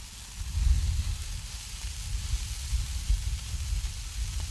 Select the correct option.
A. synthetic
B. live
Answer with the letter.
B